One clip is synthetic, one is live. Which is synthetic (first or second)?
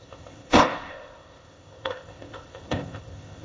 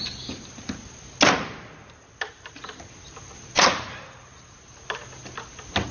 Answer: first